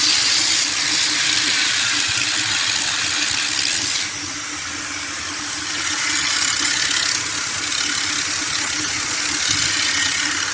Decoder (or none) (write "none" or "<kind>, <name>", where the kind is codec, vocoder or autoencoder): none